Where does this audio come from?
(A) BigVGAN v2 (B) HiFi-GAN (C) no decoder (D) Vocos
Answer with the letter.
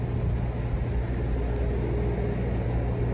C